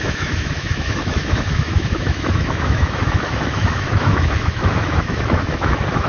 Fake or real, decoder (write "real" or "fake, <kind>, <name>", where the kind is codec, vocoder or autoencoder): fake, autoencoder, DAC-VAE